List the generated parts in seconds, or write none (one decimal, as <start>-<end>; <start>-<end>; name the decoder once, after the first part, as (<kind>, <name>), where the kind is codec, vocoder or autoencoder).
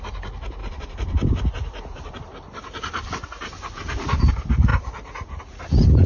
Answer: 0.6-4.3 (vocoder, BigVGAN v2)